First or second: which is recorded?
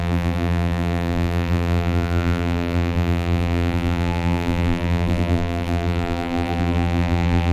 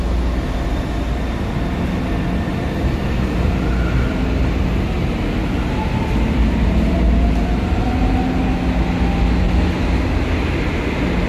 second